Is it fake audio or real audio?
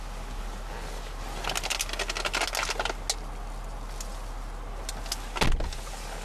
real